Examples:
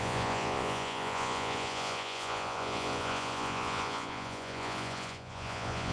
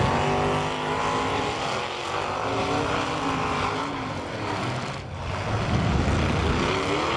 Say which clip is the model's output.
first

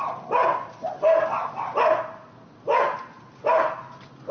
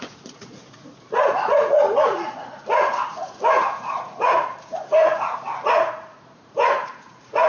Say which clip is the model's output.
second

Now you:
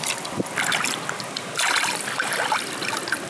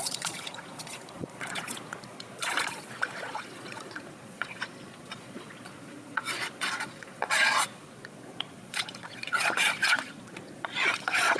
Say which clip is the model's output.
second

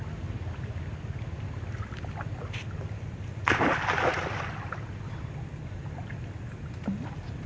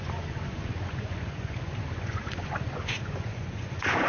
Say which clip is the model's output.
second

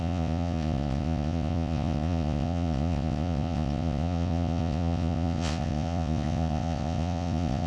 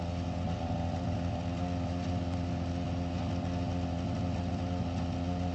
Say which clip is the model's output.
first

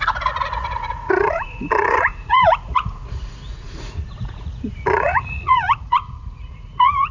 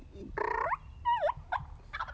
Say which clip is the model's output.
first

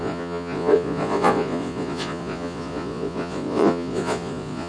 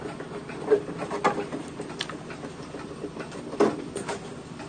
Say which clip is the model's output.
first